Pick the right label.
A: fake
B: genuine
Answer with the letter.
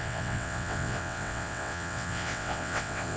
A